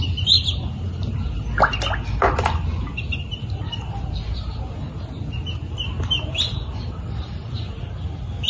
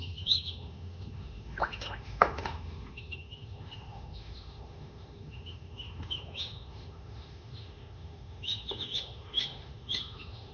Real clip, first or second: first